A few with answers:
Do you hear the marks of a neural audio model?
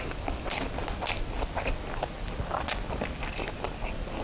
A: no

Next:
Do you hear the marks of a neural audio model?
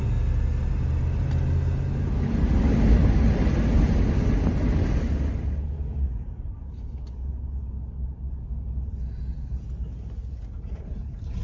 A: no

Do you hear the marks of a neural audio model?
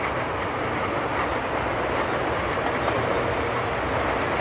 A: no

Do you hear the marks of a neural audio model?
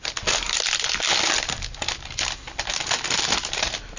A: no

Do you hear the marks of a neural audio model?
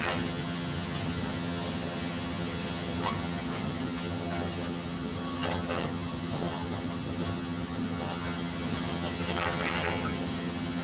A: yes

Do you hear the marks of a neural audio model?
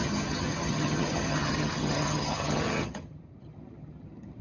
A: yes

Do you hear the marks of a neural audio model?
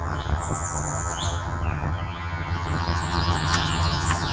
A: yes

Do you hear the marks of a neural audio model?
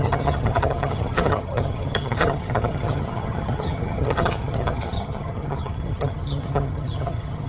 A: yes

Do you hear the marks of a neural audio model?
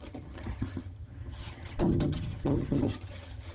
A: yes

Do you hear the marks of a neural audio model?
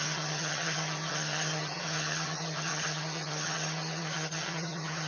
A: yes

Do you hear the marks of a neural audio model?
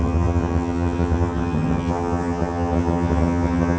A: yes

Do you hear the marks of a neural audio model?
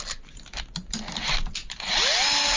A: no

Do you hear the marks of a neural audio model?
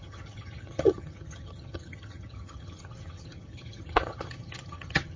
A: yes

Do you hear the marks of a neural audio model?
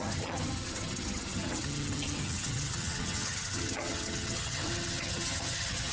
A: yes